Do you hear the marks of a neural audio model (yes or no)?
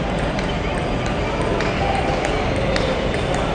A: no